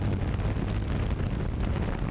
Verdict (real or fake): real